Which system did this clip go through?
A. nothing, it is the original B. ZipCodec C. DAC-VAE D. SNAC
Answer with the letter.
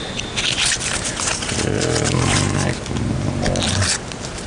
A